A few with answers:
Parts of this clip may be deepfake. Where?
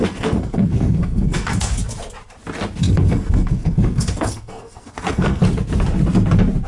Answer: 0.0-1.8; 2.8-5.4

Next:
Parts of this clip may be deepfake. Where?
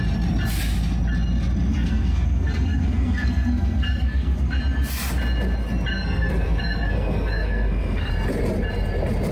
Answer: 1.7-4.6; 5.9-8.1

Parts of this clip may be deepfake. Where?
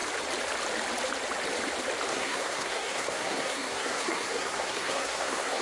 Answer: 2.1-5.6